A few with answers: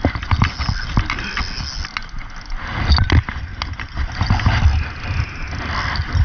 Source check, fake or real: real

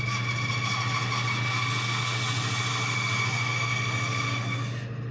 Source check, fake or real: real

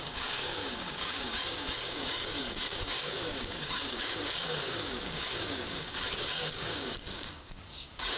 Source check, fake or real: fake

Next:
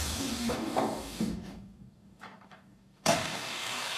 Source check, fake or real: fake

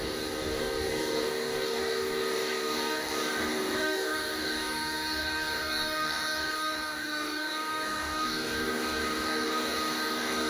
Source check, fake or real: fake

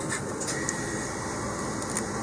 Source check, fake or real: real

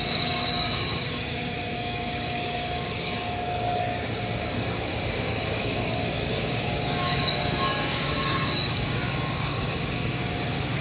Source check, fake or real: fake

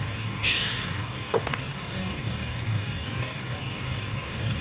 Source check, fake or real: fake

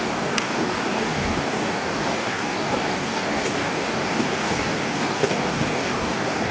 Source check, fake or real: fake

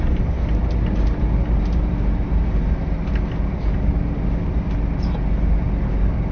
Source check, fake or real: real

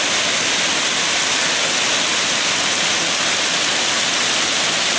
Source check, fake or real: real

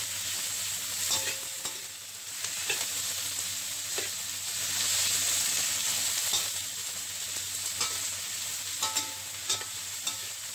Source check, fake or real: real